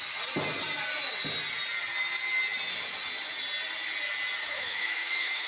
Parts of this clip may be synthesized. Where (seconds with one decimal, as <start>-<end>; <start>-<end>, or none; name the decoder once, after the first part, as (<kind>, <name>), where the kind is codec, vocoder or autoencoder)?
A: 4.4-5.5 (autoencoder, DAC-VAE)